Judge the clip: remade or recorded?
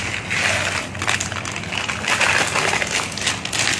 recorded